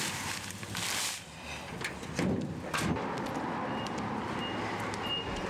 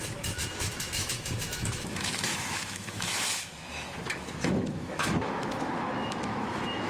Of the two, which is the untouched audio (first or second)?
first